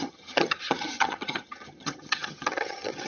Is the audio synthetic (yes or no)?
yes